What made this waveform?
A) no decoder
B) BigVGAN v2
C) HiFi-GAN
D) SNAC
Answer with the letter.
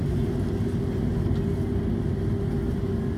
A